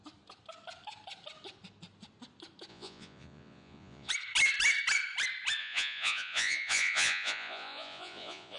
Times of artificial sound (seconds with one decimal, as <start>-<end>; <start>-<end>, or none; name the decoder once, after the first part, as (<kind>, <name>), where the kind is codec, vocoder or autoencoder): 2.7-4.1 (vocoder, Vocos); 5.6-8.6

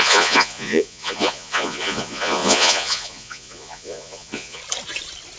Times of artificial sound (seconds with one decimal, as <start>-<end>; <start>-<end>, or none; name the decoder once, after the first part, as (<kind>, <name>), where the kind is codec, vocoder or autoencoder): 0.0-4.6 (vocoder, Vocos)

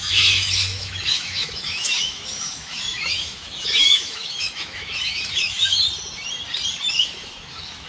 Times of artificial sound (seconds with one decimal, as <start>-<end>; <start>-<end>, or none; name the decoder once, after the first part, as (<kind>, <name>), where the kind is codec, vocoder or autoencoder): 0.0-5.7 (autoencoder, DAC-VAE); 6.9-7.9

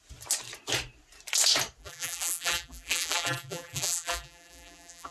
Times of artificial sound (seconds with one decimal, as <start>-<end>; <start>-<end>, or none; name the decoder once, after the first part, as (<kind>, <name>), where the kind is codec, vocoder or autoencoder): 1.8-5.1 (vocoder, BigVGAN v2)

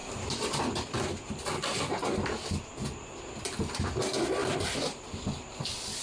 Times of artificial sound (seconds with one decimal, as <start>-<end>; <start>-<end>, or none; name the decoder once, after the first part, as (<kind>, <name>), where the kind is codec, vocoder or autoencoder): 0.0-1.7 (vocoder, BigVGAN v2); 2.6-6.0

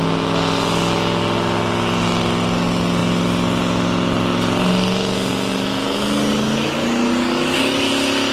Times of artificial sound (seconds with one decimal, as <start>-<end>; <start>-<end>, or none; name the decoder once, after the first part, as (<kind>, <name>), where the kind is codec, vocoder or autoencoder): 6.3-7.9 (codec, DAC)

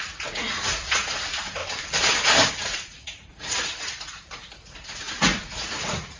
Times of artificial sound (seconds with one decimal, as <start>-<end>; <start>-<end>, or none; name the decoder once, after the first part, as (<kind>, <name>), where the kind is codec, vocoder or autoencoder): 0.0-1.6 (vocoder, Vocos); 2.5-6.2

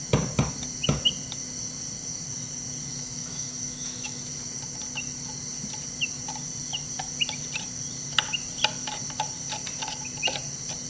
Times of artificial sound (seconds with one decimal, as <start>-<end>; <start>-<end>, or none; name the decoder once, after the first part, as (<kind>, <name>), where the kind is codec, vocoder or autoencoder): 2.9-4.2 (autoencoder, DAC-VAE)